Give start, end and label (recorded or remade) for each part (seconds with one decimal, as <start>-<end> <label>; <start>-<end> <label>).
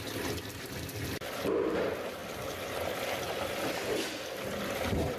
0.0-5.2 recorded